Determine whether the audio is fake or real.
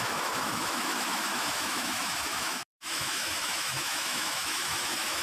fake